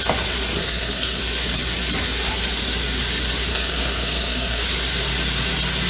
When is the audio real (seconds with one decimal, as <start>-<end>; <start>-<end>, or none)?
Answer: 0.0-0.6; 1.2-3.5; 4.6-5.9